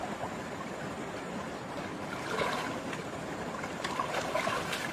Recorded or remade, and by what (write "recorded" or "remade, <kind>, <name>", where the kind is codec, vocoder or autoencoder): recorded